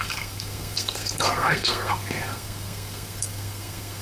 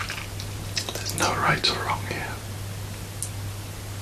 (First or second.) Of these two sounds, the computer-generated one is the first